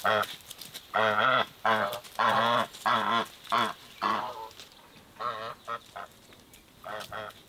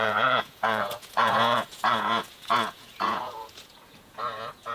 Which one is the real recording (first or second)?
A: first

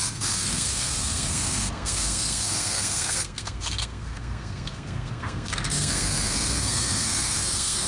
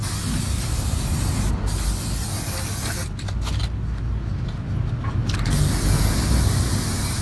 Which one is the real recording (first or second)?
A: second